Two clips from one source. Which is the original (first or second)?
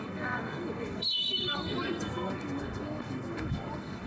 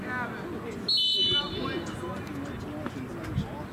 second